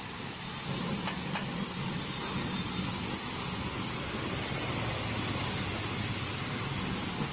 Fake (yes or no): no